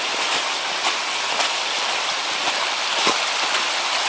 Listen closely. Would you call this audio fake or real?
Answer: real